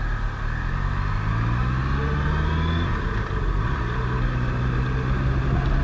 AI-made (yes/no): no